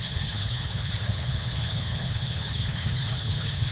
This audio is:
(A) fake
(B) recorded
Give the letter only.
A